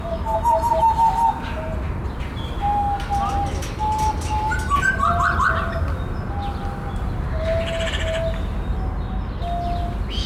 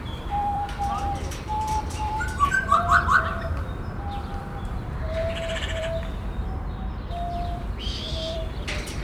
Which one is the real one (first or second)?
first